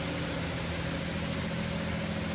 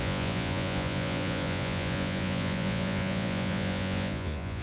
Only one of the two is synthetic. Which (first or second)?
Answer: second